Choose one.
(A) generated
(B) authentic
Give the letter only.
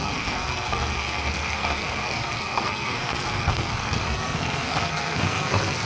A